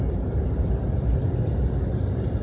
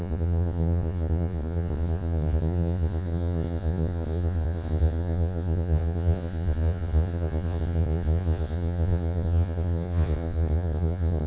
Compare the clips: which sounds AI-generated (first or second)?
second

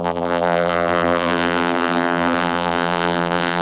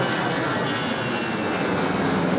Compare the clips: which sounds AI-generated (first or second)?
first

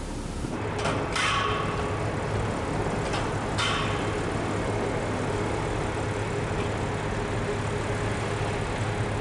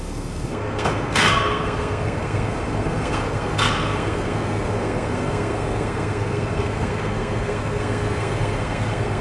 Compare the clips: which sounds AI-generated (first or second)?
second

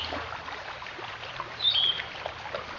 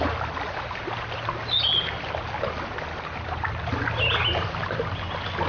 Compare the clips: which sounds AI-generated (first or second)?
first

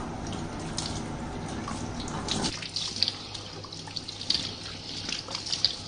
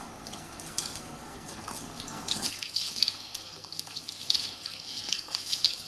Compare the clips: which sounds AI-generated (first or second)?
second